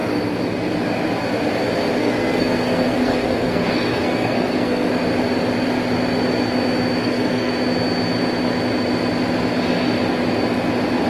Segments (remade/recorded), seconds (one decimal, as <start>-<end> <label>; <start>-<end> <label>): 0.0-2.0 recorded; 2.0-4.9 remade; 4.9-7.0 recorded; 7.0-7.5 remade; 7.5-11.1 recorded